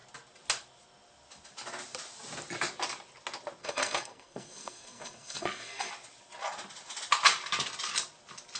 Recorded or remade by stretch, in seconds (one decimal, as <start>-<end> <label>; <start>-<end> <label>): 0.0-3.6 recorded; 3.6-5.9 remade; 5.9-8.6 recorded